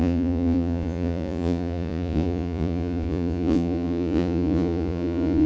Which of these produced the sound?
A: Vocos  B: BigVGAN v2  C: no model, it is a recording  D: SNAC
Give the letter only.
A